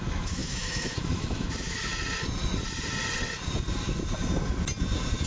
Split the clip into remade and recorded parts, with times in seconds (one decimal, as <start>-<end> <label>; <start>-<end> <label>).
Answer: 0.0-1.9 remade; 1.9-5.3 recorded